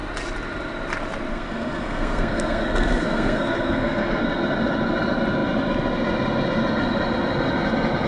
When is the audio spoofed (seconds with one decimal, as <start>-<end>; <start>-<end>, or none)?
1.3-4.2